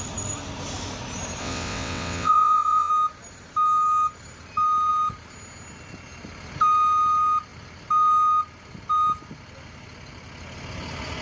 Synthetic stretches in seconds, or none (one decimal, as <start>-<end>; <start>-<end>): 1.4-2.9